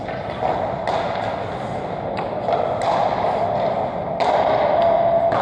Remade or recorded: recorded